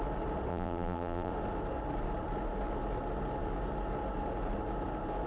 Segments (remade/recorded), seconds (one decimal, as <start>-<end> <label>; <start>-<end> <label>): 0.0-0.5 recorded; 0.5-1.3 remade; 1.3-5.3 recorded